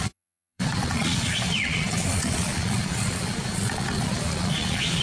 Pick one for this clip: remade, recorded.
remade